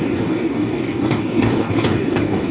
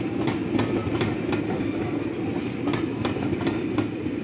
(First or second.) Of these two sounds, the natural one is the second